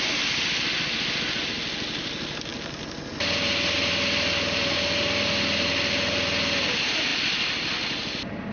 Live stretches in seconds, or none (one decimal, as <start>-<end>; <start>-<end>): 0.0-8.5